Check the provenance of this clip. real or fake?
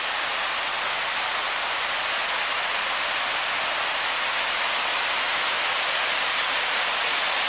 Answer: real